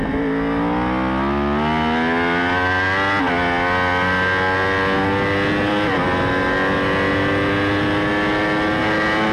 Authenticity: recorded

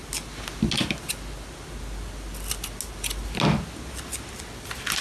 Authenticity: recorded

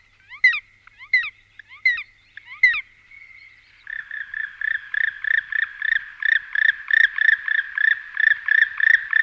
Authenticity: recorded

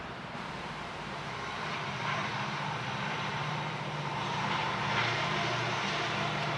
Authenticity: remade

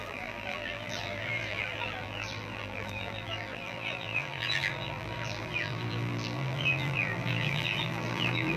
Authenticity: remade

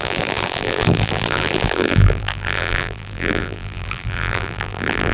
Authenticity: remade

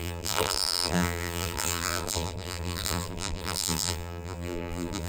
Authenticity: remade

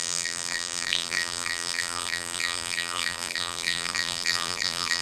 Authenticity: remade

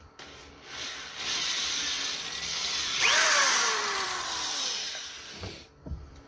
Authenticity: remade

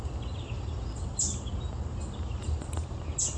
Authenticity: recorded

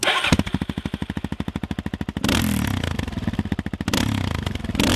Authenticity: recorded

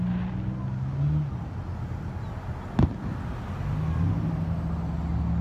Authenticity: recorded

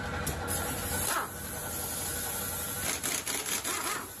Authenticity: recorded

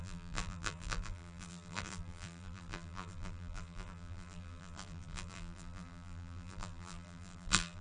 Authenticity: remade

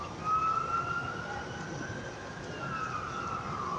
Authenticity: recorded